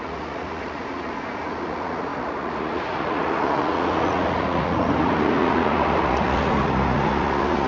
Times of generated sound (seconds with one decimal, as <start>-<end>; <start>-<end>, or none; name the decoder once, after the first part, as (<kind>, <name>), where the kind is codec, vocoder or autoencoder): 0.0-7.7 (vocoder, Vocos)